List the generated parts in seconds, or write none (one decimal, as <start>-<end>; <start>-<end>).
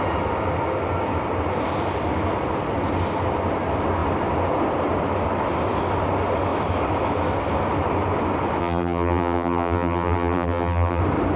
8.6-11.0